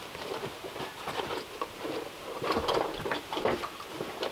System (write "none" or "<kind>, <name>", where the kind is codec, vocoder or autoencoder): vocoder, BigVGAN v2